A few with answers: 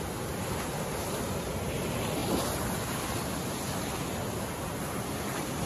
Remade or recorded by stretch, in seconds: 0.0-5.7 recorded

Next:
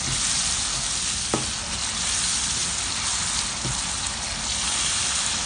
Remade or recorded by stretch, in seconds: 0.0-5.5 recorded

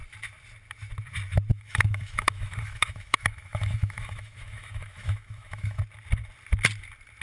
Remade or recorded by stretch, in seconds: 0.0-1.5 recorded; 1.5-5.8 remade; 5.8-7.2 recorded

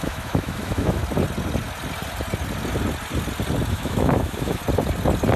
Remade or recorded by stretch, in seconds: 0.0-1.0 remade; 1.0-3.7 recorded; 3.7-4.6 remade; 4.6-5.4 recorded